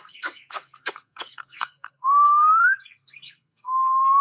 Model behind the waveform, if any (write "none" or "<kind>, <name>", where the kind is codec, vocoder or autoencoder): codec, SNAC